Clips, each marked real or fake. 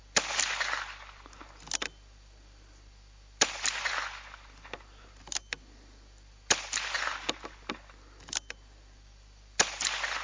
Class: real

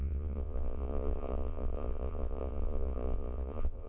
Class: fake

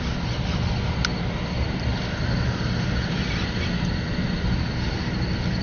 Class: real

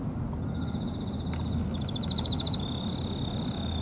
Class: real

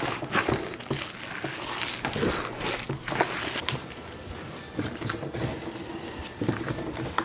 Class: real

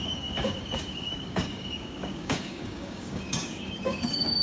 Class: fake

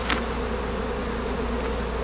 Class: real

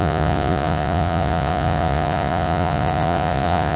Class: fake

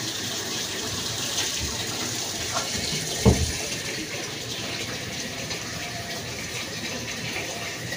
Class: fake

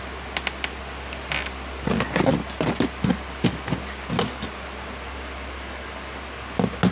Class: real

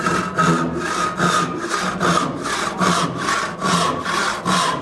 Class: real